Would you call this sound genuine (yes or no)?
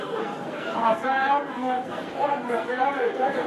no